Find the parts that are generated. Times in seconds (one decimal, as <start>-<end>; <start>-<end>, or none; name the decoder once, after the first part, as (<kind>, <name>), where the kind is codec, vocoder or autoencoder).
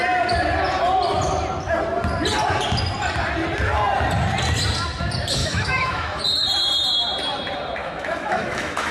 5.4-6.2 (autoencoder, DAC-VAE); 7.8-8.9